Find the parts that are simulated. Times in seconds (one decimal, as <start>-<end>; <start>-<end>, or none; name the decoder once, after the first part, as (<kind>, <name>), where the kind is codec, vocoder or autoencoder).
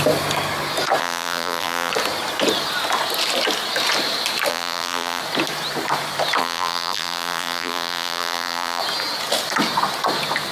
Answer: 1.0-1.9 (vocoder, BigVGAN v2); 4.5-5.2; 6.4-8.8